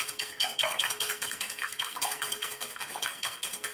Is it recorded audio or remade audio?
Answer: remade